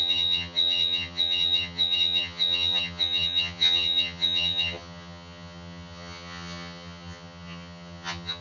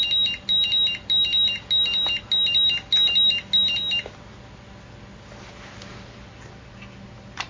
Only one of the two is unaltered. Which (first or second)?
second